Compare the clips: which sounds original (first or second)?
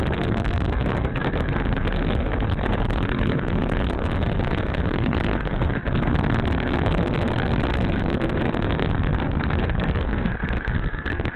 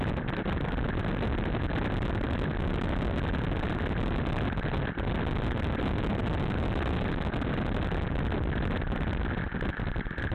second